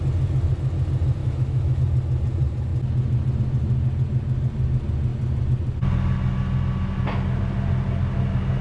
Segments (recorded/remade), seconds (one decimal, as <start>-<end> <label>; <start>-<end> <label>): 0.0-1.2 recorded; 1.2-1.8 remade; 1.8-8.6 recorded